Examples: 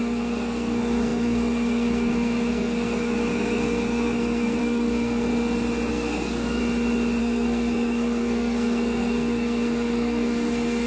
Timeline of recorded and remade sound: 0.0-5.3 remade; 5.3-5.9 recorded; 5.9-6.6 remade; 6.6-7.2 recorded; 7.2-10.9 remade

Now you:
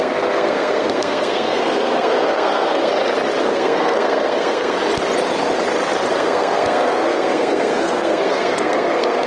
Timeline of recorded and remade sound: 0.0-2.9 remade; 2.9-3.4 recorded; 3.4-4.8 remade; 4.8-6.1 recorded; 6.1-9.3 remade

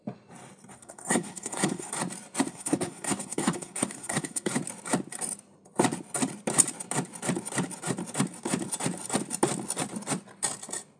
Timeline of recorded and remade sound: 0.0-0.7 recorded; 0.7-1.9 remade; 1.9-2.5 recorded; 2.5-4.5 remade; 4.5-11.0 recorded